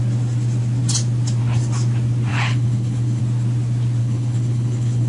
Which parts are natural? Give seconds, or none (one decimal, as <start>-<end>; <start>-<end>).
0.0-2.3; 3.2-4.0